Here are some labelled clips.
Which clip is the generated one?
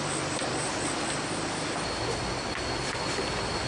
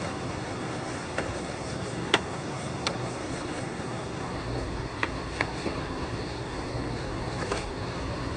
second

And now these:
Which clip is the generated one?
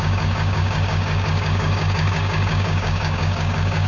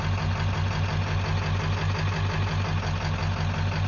first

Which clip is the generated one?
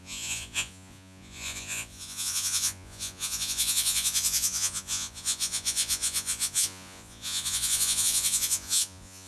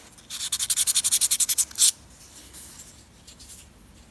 first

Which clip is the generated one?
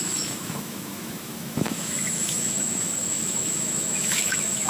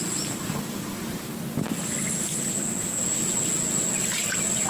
first